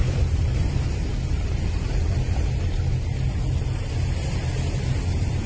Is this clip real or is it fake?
real